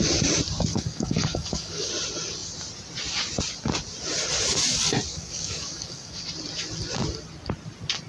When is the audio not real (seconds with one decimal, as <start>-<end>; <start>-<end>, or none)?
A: 0.7-1.9; 5.1-6.2